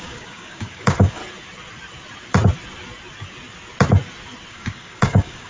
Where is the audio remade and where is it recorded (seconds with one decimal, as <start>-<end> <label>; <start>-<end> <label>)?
0.0-1.2 remade; 1.2-4.5 recorded; 4.5-5.5 remade

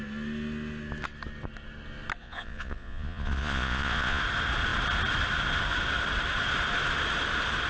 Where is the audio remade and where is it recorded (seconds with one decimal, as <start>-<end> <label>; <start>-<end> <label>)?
0.0-2.2 recorded; 2.2-4.2 remade; 4.2-7.7 recorded

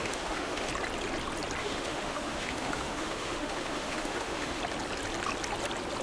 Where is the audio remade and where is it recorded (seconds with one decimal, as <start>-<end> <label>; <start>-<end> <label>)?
0.0-0.7 remade; 0.7-1.6 recorded; 1.6-4.6 remade; 4.6-6.0 recorded

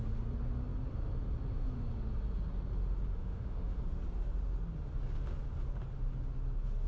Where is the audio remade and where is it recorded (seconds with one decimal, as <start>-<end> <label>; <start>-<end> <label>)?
0.0-3.1 recorded; 3.1-3.8 remade; 3.8-6.9 recorded

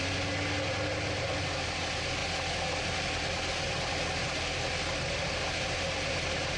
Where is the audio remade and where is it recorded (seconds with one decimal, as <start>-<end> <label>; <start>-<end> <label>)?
0.0-6.6 recorded

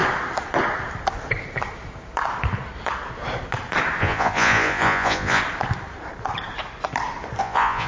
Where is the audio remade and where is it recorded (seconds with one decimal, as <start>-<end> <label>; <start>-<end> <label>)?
0.0-4.0 recorded; 4.0-5.4 remade; 5.4-7.4 recorded; 7.4-7.9 remade

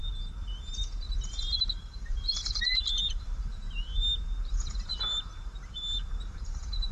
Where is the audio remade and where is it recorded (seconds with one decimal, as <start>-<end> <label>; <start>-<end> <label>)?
0.0-1.3 recorded; 1.3-6.9 remade

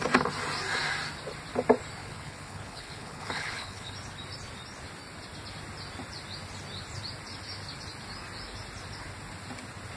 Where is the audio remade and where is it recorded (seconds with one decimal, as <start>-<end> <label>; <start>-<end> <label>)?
0.0-2.0 recorded; 2.0-3.9 remade; 3.9-10.0 recorded